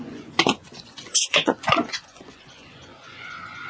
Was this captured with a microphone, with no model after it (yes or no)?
no